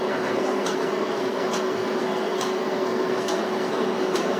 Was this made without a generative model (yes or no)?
no